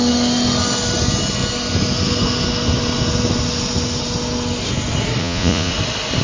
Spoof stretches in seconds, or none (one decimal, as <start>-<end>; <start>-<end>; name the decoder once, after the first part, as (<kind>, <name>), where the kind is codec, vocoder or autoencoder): 5.2-5.7 (vocoder, Vocos)